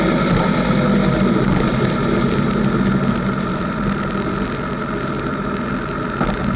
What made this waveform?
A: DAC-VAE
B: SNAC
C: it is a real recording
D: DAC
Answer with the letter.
C